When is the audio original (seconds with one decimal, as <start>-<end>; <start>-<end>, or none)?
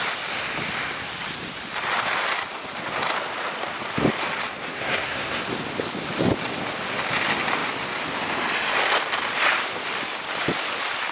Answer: 0.0-4.7; 5.4-11.1